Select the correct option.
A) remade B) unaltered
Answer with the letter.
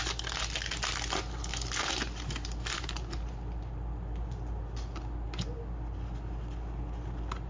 B